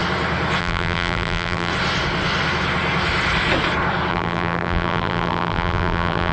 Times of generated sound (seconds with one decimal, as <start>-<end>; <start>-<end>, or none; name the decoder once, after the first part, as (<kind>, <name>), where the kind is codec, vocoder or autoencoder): 0.6-1.7 (vocoder, BigVGAN v2); 4.1-6.3